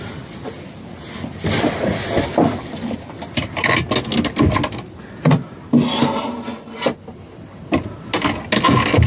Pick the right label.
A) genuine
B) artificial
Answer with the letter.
A